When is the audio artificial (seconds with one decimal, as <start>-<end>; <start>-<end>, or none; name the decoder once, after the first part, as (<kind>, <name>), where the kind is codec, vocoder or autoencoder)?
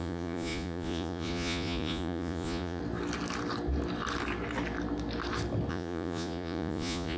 0.0-2.8 (vocoder, Vocos); 5.7-7.2